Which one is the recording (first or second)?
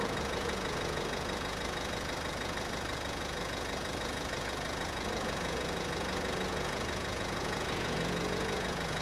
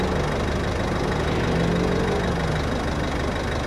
second